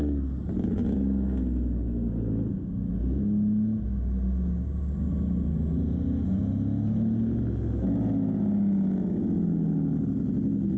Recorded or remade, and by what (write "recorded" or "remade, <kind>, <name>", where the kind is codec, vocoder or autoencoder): recorded